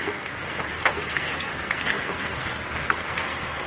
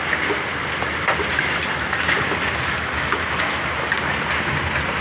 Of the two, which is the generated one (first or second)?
first